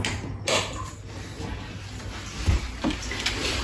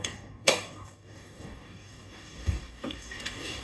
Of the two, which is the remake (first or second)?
second